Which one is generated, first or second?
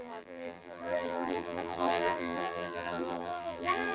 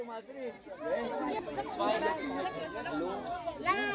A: first